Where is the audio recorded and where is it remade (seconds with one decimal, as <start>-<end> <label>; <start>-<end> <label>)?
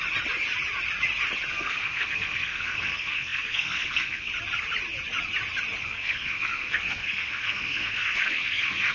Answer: 0.0-1.5 recorded; 1.5-4.3 remade; 4.3-5.8 recorded; 5.8-8.9 remade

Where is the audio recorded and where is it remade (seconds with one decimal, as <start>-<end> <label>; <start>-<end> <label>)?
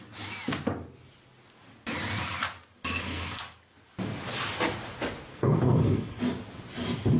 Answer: 0.0-2.8 recorded; 2.8-3.4 remade; 3.4-5.3 recorded; 5.3-6.2 remade; 6.2-7.2 recorded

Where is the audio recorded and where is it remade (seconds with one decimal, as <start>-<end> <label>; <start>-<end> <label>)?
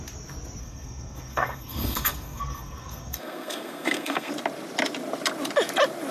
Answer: 0.0-0.6 recorded; 0.6-4.3 remade; 4.3-6.1 recorded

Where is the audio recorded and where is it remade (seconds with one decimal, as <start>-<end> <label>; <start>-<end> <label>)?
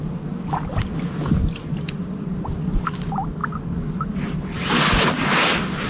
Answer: 0.0-5.9 recorded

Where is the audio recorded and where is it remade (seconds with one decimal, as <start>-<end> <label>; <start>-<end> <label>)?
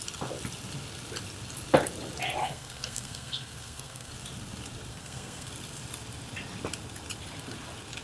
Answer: 0.0-2.4 recorded; 2.4-4.1 remade; 4.1-4.9 recorded; 4.9-5.5 remade; 5.5-8.0 recorded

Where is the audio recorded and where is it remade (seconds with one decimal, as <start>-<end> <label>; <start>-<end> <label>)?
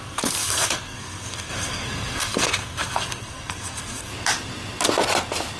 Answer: 0.0-4.1 remade; 4.1-5.6 recorded